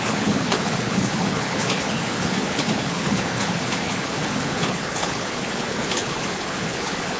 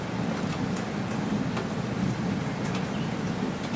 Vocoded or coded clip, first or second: first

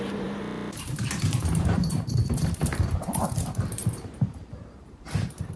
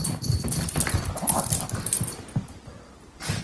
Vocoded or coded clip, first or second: first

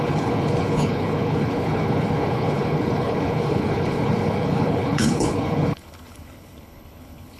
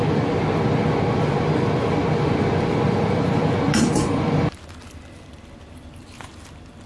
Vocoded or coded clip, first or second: first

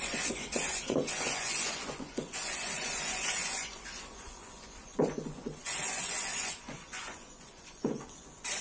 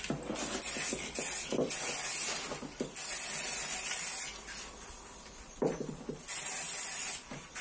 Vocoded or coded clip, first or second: first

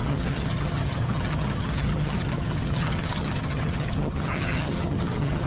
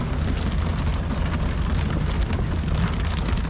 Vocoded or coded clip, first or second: first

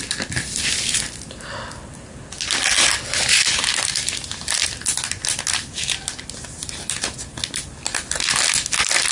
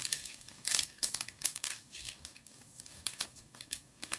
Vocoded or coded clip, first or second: second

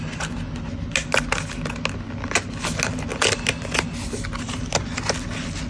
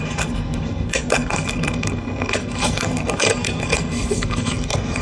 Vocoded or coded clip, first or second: second